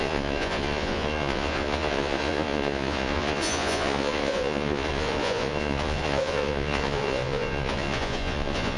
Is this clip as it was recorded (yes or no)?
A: no